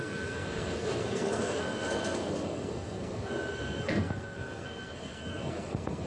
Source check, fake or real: fake